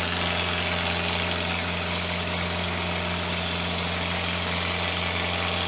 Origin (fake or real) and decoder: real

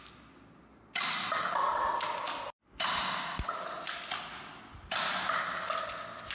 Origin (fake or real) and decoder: real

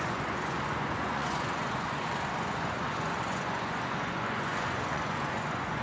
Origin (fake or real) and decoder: fake, vocoder, Vocos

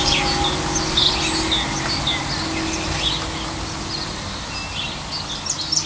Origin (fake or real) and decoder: real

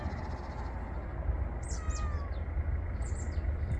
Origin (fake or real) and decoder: real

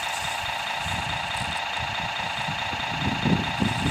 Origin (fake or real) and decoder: real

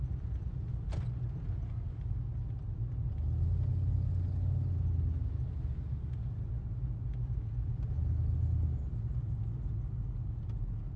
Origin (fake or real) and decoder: real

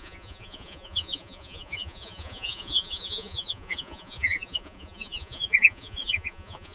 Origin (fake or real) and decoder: fake, vocoder, Vocos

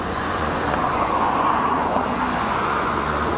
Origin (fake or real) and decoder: fake, vocoder, Vocos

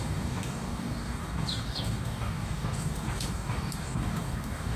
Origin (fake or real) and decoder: fake, codec, DAC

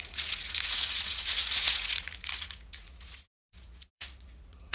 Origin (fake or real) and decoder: fake, vocoder, Vocos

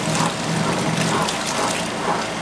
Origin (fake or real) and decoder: real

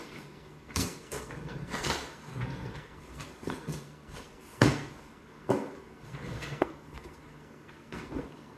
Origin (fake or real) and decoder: fake, codec, SNAC